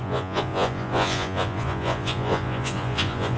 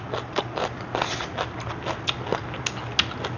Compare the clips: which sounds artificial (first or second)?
first